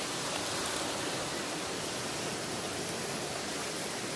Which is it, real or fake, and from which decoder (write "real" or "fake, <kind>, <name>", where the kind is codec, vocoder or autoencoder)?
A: real